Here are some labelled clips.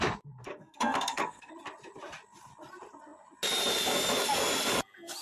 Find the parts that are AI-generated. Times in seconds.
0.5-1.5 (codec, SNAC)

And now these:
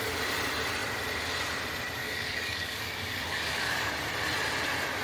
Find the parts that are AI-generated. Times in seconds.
2.0-3.9 (codec, DAC)

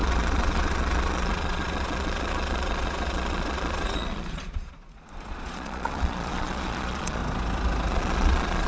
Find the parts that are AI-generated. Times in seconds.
0.0-7.2 (vocoder, Vocos); 7.9-8.7